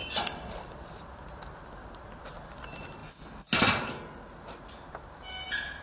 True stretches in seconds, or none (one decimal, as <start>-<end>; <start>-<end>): 0.7-5.8